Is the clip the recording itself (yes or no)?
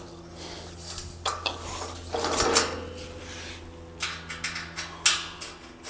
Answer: yes